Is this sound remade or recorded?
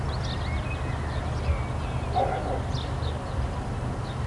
recorded